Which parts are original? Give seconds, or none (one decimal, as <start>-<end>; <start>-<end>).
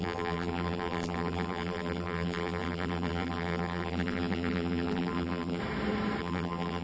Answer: 5.6-6.2